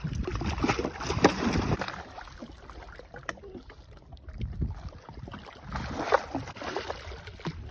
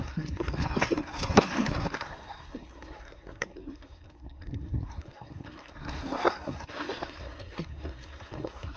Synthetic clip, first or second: second